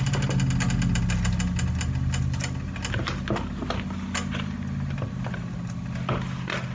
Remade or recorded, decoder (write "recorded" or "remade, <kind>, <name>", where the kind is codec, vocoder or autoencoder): recorded